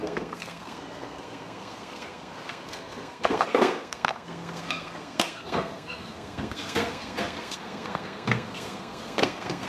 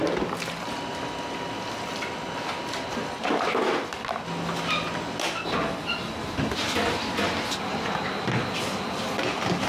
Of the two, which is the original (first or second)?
second